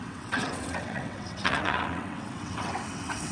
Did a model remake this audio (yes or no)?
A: yes